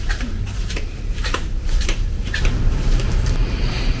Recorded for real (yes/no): no